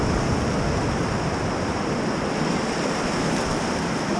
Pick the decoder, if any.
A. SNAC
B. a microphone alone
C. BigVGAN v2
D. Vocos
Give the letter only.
B